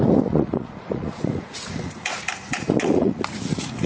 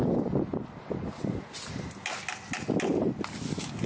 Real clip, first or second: second